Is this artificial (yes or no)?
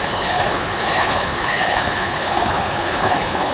yes